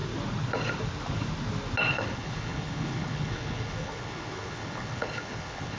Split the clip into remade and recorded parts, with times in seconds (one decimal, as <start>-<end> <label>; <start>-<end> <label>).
0.0-1.9 recorded; 1.9-5.8 remade